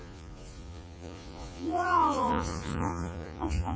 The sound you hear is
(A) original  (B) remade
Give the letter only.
B